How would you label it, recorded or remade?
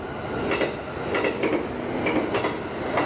recorded